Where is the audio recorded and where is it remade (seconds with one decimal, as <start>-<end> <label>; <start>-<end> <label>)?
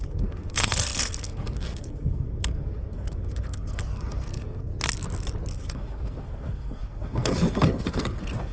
0.0-4.7 remade; 4.7-5.5 recorded; 5.5-8.5 remade